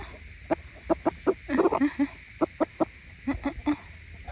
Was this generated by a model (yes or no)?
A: no